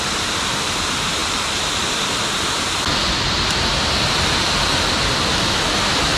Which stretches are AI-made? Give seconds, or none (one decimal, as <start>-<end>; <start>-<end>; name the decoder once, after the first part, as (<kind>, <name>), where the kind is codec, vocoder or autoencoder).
none